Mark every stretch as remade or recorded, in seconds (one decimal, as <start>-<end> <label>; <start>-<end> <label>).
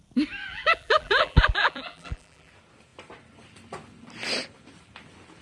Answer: 0.0-0.5 recorded; 0.5-2.5 remade; 2.5-5.4 recorded